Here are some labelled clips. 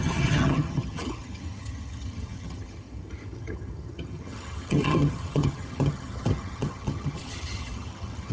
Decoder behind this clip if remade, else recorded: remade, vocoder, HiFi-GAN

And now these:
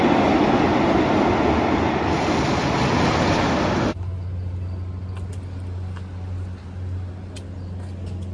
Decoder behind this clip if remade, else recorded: recorded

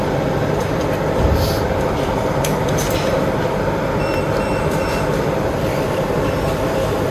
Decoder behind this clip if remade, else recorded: remade, vocoder, BigVGAN v2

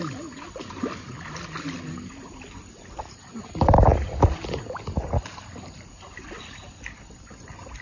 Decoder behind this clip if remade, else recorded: recorded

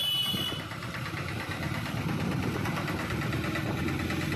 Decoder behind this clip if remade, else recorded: recorded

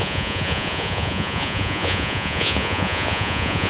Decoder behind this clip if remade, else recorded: remade, vocoder, Vocos